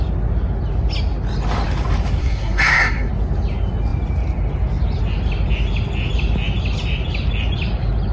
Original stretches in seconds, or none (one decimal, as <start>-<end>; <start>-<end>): 0.0-2.2; 3.1-8.1